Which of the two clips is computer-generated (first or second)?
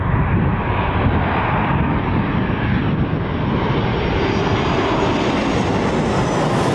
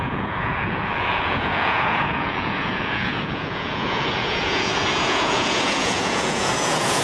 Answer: second